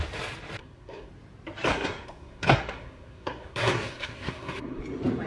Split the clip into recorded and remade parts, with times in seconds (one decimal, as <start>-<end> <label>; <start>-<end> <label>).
0.0-0.6 recorded; 0.6-1.1 remade; 1.1-1.7 recorded; 1.7-4.8 remade; 4.8-5.3 recorded